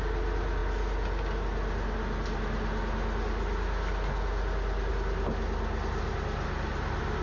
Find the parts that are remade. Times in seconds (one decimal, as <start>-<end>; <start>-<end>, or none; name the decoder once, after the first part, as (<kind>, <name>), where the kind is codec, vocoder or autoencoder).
none